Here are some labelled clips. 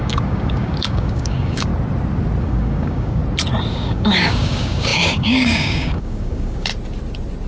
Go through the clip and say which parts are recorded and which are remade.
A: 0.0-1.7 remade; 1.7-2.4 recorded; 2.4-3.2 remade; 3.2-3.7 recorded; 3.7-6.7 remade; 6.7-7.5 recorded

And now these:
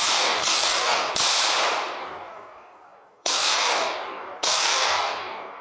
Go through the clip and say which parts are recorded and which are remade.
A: 0.0-1.1 remade; 1.1-2.0 recorded; 2.0-5.6 remade

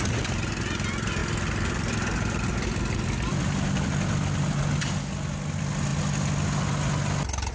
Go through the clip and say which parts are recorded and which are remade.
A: 0.0-7.5 recorded